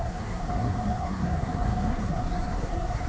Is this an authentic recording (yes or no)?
no